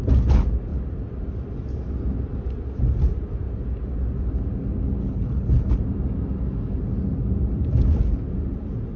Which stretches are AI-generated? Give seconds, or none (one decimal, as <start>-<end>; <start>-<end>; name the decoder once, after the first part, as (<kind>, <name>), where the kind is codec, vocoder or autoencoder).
5.0-5.7 (codec, HILCodec)